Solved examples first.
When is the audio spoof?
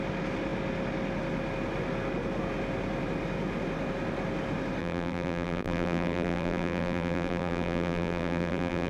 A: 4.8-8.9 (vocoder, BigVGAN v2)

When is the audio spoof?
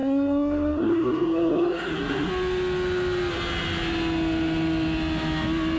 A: 0.0-2.3 (codec, SNAC)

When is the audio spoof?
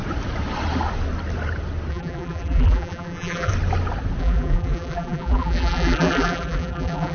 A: 1.9-3.5 (vocoder, BigVGAN v2); 4.2-7.1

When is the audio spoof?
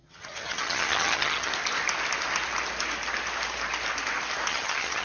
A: 0.0-1.5 (vocoder, HiFi-GAN); 4.5-5.0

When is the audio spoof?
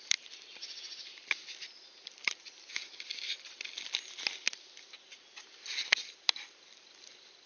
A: none